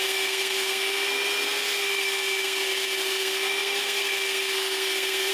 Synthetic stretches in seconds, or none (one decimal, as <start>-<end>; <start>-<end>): 0.0-5.3